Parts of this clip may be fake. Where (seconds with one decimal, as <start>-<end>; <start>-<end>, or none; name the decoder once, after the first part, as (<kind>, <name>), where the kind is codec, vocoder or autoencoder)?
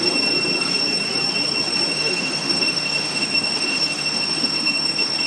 1.9-5.3 (autoencoder, DAC-VAE)